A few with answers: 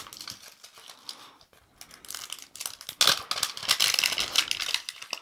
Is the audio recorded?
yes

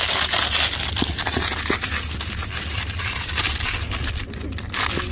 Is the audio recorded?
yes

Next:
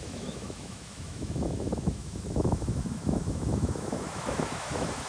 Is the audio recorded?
no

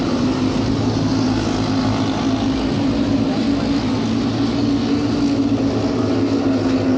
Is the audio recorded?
yes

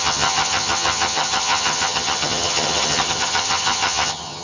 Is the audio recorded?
no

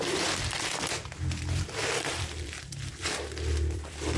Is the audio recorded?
no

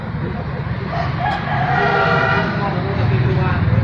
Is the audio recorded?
yes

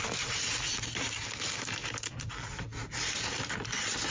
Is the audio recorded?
yes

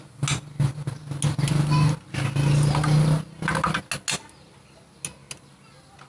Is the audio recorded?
yes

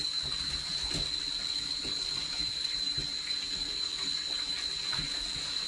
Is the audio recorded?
yes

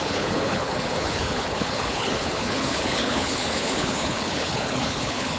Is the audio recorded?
no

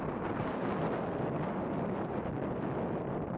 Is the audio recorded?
yes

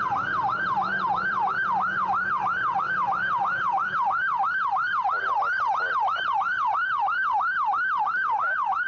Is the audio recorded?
no